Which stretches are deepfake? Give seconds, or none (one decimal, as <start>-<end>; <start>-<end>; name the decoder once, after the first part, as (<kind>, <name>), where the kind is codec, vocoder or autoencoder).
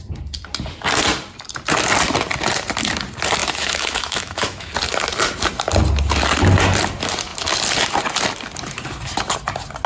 3.4-4.7 (autoencoder, DAC-VAE)